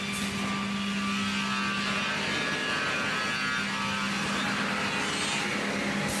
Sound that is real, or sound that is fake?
real